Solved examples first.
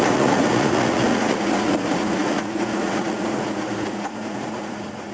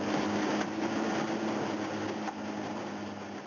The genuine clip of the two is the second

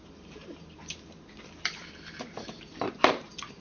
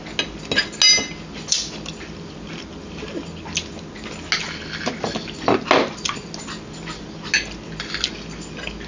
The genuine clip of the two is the second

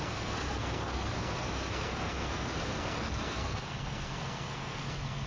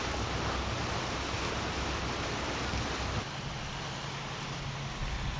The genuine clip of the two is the second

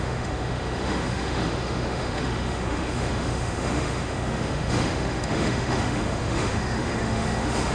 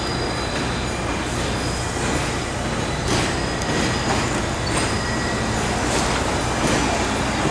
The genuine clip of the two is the second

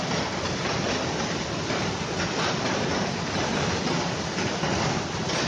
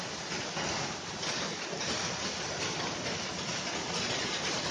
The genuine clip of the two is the second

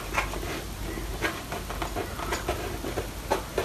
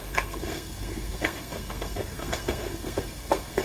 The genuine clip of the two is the first